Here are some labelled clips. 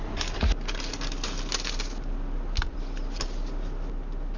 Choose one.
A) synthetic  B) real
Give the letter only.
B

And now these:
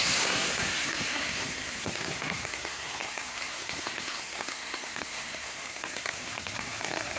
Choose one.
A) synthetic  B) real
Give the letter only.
A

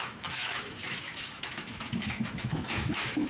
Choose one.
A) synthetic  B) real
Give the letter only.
A